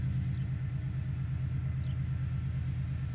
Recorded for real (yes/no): yes